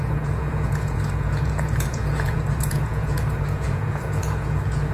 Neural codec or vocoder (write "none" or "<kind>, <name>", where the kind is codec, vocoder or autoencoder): vocoder, Vocos